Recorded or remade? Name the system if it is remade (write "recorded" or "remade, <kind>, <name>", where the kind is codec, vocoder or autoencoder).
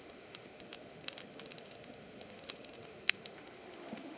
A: remade, autoencoder, DAC-VAE